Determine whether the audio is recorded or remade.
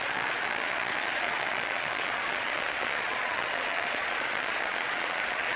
remade